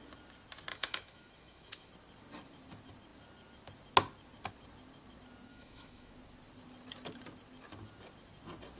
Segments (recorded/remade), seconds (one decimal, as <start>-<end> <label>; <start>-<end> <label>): 0.0-0.7 recorded; 0.7-1.9 remade; 1.9-5.5 recorded; 5.5-6.1 remade; 6.1-8.8 recorded

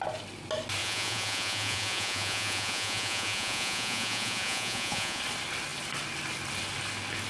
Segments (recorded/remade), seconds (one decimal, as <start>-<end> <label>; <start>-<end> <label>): 0.0-0.8 recorded; 0.8-5.2 remade; 5.2-7.3 recorded